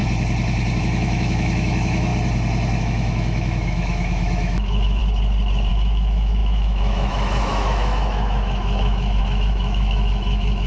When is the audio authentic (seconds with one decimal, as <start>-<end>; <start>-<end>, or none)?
0.0-0.8; 2.1-2.8; 5.0-5.7